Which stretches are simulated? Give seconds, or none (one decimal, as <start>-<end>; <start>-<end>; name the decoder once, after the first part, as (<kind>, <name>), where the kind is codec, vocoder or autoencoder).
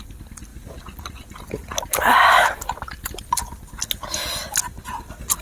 none